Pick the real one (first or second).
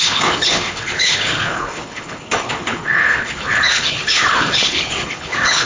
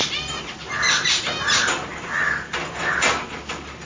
second